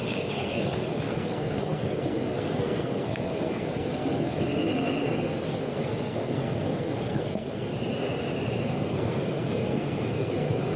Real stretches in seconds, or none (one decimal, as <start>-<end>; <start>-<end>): 7.7-8.6